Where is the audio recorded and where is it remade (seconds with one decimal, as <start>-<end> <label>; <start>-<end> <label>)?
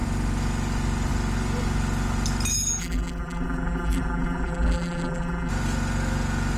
0.0-2.8 recorded; 2.8-5.5 remade; 5.5-6.6 recorded